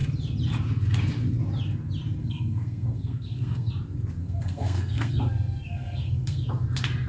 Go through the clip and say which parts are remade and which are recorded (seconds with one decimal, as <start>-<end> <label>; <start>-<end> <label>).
0.0-2.2 recorded; 2.2-3.7 remade; 3.7-4.2 recorded; 4.2-6.5 remade; 6.5-7.1 recorded